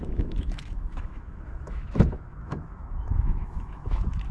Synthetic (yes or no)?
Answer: yes